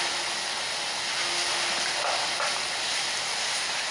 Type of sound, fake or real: real